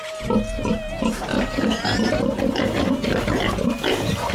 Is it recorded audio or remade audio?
recorded